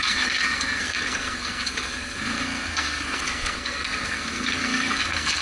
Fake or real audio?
fake